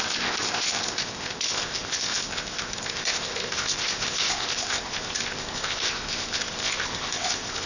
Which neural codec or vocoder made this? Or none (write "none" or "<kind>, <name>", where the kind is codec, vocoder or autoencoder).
codec, ZipCodec